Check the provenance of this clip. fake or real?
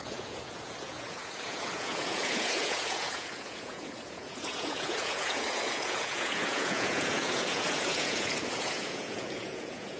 fake